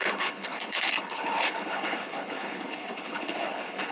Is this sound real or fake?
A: fake